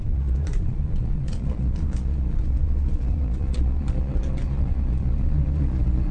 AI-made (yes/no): yes